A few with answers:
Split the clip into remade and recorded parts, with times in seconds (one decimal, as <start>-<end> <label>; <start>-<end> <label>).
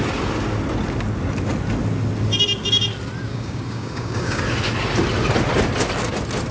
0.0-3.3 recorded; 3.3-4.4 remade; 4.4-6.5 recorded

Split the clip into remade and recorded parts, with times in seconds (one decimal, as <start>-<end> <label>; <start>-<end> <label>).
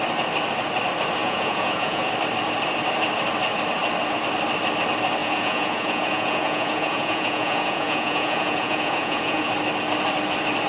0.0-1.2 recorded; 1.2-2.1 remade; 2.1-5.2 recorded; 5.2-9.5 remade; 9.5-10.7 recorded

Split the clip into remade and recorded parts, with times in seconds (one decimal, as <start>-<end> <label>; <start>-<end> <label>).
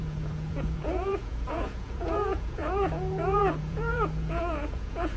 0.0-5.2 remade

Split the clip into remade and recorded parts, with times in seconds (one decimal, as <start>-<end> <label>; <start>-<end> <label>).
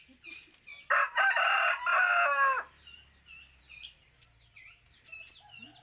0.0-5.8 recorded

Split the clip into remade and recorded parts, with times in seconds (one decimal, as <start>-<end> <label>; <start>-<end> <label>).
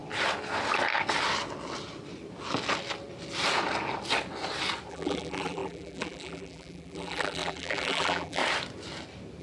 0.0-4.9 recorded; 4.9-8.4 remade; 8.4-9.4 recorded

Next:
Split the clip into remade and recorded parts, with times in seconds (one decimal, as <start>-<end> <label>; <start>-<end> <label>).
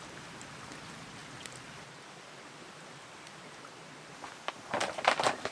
0.0-5.5 recorded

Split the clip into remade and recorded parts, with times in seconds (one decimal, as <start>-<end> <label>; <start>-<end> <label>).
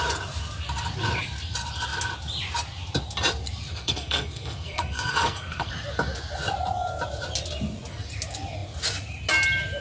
0.0-3.7 recorded; 3.7-5.7 remade; 5.7-9.8 recorded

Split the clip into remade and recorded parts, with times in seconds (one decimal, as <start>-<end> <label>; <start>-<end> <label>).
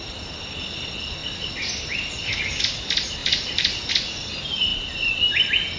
0.0-3.2 recorded; 3.2-3.9 remade; 3.9-5.8 recorded